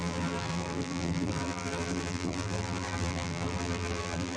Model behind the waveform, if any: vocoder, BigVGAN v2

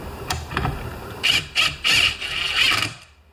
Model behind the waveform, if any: vocoder, BigVGAN v2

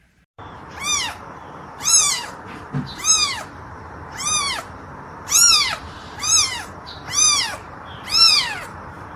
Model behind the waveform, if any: vocoder, BigVGAN v2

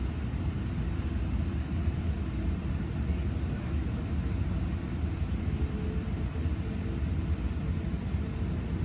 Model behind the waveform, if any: none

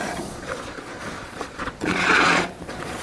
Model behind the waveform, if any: vocoder, Vocos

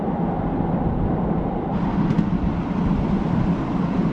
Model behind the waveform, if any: none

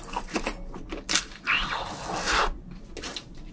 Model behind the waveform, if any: none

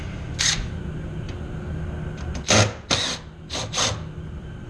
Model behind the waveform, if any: none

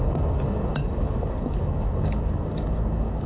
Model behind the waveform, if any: codec, DAC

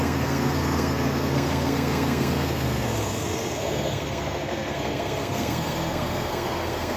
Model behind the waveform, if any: codec, SNAC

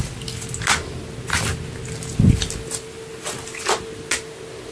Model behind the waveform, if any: none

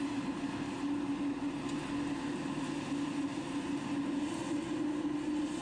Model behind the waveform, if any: none